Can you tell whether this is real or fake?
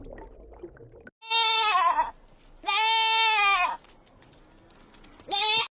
real